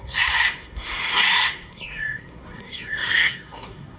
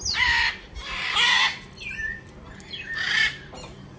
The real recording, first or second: second